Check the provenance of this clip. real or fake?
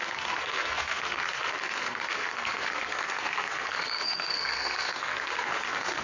fake